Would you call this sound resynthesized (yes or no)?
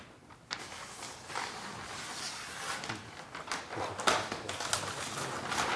no